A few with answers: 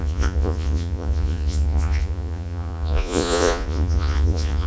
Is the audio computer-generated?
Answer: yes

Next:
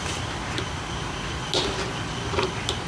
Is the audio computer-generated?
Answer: no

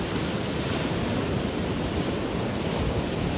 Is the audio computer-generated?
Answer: no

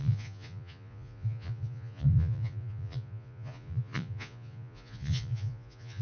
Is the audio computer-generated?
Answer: yes